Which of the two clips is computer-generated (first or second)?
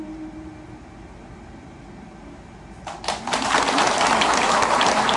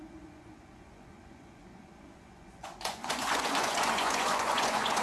second